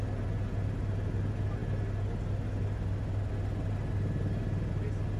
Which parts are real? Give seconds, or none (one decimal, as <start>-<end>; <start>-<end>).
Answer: 0.0-5.2